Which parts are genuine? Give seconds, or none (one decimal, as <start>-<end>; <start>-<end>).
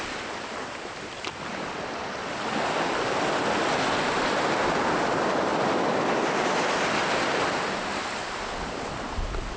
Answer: 0.0-9.6